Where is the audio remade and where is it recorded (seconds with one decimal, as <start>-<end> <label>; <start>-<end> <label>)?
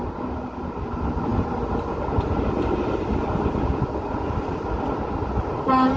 0.0-6.0 recorded